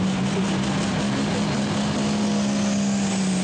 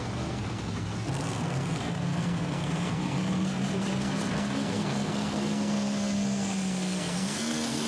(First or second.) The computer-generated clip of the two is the second